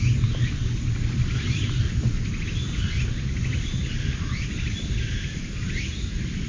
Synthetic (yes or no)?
no